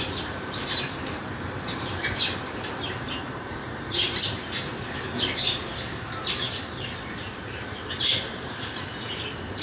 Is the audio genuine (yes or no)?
no